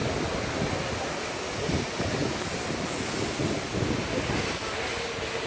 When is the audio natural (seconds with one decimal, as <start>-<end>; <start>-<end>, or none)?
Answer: 0.0-5.5